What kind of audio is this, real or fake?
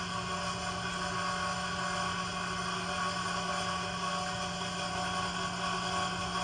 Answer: real